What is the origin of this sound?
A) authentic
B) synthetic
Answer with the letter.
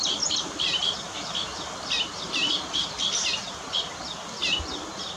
A